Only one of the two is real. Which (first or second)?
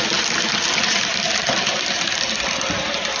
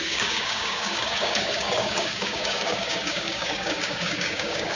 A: first